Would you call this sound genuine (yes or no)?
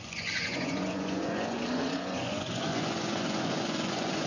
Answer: no